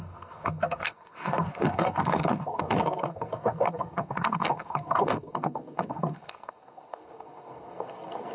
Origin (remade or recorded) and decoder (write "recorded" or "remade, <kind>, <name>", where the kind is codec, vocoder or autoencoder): remade, codec, SNAC